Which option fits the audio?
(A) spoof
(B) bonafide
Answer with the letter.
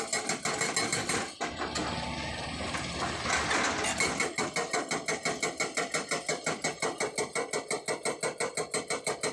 B